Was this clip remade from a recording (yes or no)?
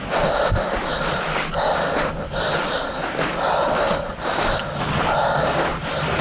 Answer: no